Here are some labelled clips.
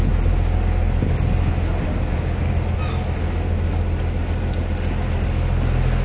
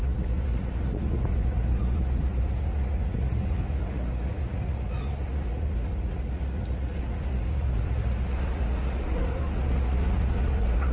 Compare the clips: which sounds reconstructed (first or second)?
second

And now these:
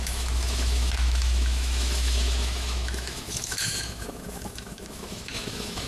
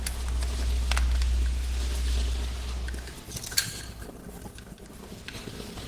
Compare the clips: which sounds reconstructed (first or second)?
first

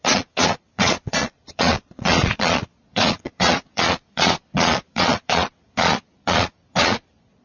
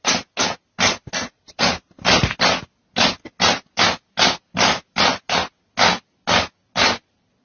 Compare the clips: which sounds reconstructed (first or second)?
first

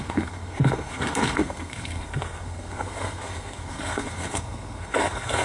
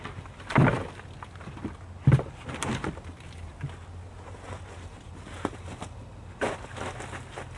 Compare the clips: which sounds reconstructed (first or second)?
first